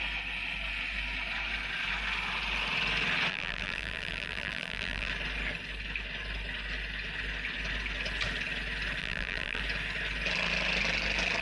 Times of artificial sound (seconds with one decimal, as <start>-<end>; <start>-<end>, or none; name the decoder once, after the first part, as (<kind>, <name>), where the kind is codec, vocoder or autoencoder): 3.3-5.1 (vocoder, BigVGAN v2); 9.0-9.6